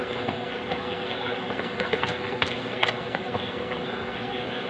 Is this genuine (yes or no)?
no